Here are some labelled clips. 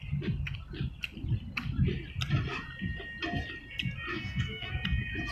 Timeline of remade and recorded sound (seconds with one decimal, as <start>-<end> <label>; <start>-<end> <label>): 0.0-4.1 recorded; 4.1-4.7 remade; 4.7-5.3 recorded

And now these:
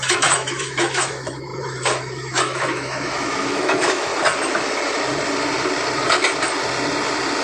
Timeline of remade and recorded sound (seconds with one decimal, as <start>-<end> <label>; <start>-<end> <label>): 0.0-4.1 remade; 4.1-7.4 recorded

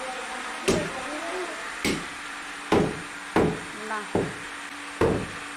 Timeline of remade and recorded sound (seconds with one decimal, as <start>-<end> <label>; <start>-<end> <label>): 0.0-0.8 recorded; 0.8-2.6 remade; 2.6-5.6 recorded

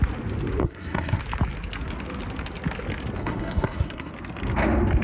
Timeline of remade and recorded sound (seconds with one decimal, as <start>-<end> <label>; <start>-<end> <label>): 0.0-0.6 recorded; 0.6-1.2 remade; 1.2-3.2 recorded; 3.2-4.1 remade; 4.1-5.0 recorded

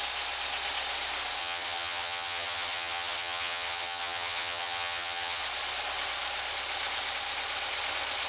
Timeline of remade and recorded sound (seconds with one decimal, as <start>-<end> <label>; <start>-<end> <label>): 0.0-1.4 recorded; 1.4-5.4 remade; 5.4-8.3 recorded

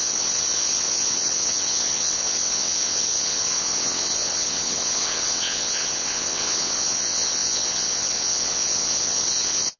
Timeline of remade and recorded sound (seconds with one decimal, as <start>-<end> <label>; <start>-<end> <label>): 0.0-9.8 remade

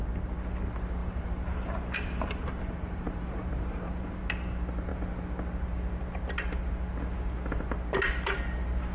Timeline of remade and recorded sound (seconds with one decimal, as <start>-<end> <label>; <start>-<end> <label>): 0.0-1.0 recorded; 1.0-4.2 remade; 4.2-8.9 recorded